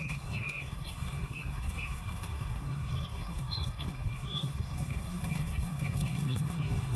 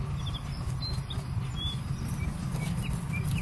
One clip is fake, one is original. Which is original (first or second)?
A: second